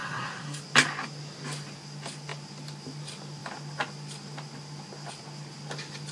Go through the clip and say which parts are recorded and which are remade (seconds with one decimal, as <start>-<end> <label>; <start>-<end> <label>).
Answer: 0.0-0.6 remade; 0.6-6.1 recorded